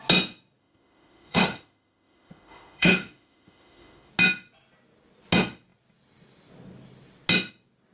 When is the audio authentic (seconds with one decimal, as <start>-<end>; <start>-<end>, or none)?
0.0-0.6; 4.1-7.9